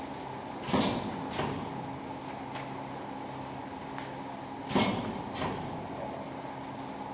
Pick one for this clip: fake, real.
real